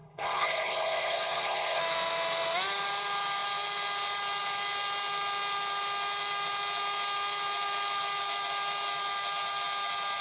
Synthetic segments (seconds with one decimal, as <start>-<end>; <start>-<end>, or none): 0.0-1.8